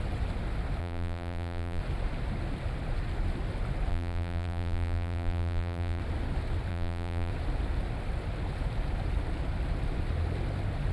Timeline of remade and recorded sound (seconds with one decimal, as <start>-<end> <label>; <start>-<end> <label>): 0.0-0.8 recorded; 0.8-1.8 remade; 1.8-3.9 recorded; 3.9-6.0 remade; 6.0-6.7 recorded; 6.7-7.3 remade; 7.3-10.9 recorded